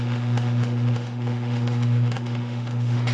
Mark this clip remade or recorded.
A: remade